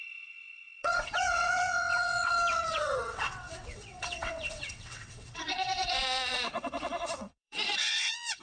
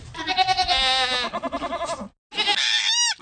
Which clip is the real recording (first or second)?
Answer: second